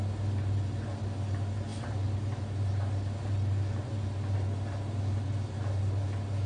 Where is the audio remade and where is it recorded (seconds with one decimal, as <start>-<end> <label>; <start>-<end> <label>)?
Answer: 0.0-6.5 recorded